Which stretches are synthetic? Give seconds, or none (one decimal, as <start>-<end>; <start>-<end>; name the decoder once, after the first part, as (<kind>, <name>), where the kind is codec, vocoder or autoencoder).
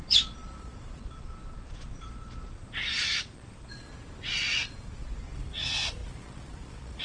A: 0.0-3.9 (vocoder, Vocos); 4.4-7.0